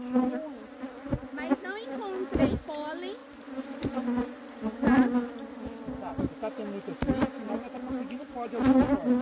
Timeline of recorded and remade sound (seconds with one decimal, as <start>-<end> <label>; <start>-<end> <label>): 0.0-9.2 recorded